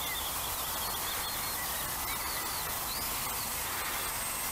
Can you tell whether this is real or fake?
real